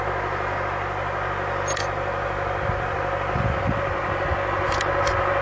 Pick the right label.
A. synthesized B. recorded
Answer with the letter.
B